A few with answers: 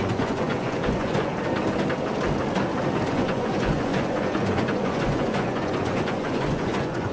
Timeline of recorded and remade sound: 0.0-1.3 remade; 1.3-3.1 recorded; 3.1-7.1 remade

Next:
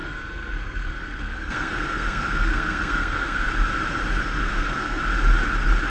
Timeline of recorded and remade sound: 0.0-3.5 remade; 3.5-4.4 recorded; 4.4-5.0 remade; 5.0-5.9 recorded